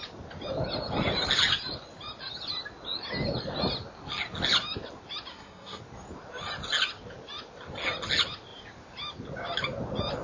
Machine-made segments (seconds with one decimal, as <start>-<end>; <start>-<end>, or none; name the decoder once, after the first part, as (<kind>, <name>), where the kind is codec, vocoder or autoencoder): 5.3-5.8 (codec, SNAC)